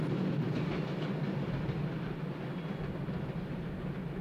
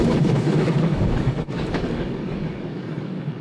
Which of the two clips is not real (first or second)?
second